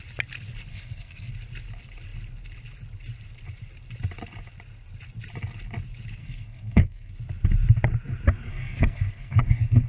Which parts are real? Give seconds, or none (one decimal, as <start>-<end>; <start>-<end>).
0.0-0.7; 1.3-6.2; 7.1-8.5